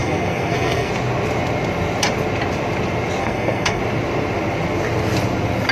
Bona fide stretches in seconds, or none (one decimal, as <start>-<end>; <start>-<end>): 0.9-3.2; 3.8-5.7

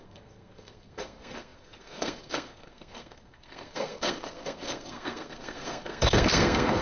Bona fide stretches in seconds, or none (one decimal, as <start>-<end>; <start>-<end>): none

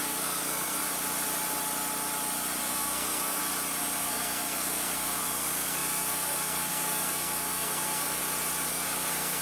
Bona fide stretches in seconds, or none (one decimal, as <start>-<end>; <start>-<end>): 0.8-2.6; 3.4-4.0; 8.2-8.7